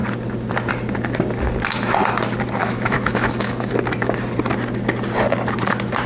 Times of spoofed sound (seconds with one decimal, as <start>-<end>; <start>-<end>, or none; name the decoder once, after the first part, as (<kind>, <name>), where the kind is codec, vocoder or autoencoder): 2.6-3.7 (autoencoder, DAC-VAE)